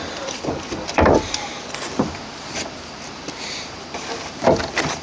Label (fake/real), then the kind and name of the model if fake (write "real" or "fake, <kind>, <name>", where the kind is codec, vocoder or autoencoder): fake, vocoder, BigVGAN v2